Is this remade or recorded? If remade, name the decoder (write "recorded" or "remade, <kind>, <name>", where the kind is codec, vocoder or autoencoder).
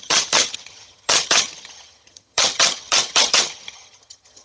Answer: remade, vocoder, HiFi-GAN